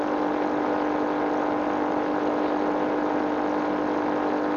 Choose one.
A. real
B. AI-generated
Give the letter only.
A